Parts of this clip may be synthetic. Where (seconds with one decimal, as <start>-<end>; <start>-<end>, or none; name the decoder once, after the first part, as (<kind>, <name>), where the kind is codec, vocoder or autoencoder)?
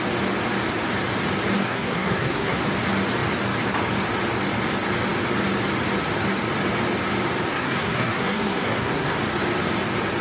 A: 1.6-2.6 (codec, SNAC); 7.5-9.2